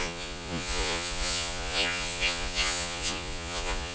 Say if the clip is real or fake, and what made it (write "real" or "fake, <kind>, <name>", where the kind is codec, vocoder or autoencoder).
fake, vocoder, Vocos